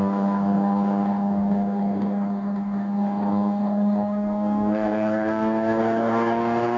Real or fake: fake